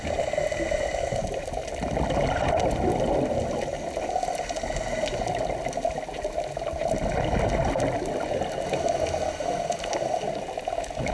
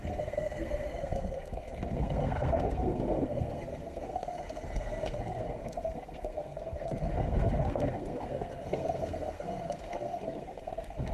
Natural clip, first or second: first